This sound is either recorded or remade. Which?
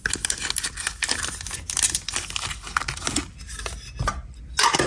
recorded